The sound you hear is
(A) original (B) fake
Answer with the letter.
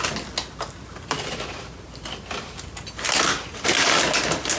A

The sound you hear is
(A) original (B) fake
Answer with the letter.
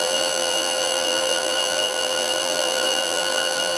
B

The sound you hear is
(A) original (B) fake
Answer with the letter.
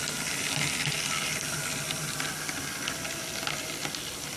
A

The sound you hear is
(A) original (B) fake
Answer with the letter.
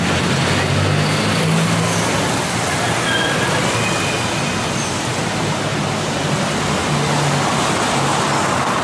A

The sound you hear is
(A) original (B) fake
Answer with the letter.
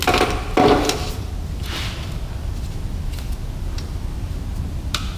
A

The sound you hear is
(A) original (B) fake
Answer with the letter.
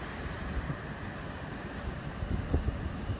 A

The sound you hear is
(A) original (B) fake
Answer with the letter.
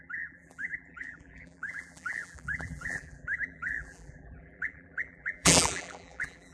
B